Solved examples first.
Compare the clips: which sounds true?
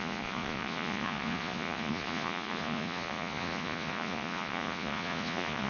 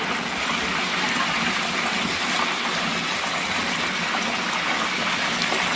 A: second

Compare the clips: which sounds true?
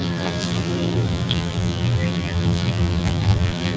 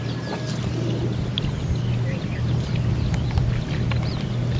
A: second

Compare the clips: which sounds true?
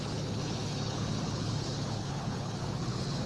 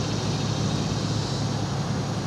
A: second